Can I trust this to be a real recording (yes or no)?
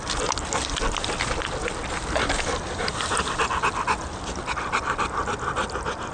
yes